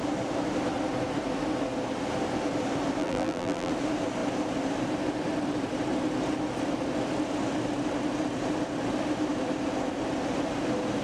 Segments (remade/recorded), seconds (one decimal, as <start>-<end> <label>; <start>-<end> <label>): 0.0-3.0 recorded; 3.0-3.7 remade; 3.7-11.0 recorded